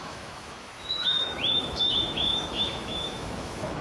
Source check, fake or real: fake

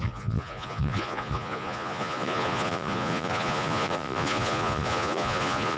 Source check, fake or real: fake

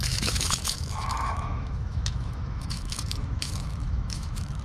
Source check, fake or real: fake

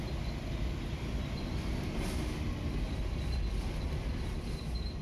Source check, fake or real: real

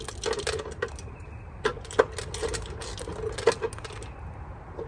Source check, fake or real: real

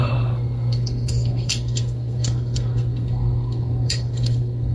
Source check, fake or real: fake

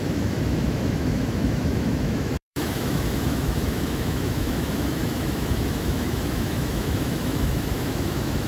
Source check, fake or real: fake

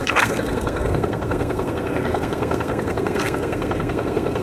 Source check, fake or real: fake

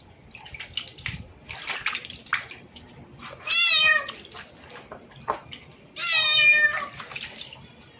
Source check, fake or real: real